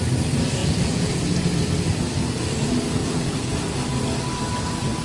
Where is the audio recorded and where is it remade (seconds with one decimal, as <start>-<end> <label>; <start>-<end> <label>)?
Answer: 0.0-0.6 recorded; 0.6-1.2 remade; 1.2-3.0 recorded; 3.0-3.5 remade; 3.5-5.0 recorded